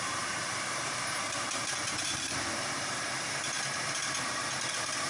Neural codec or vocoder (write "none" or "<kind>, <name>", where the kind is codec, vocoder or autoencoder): vocoder, BigVGAN v2